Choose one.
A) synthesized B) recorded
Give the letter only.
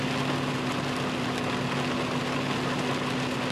B